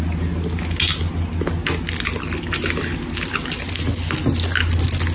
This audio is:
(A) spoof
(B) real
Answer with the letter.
B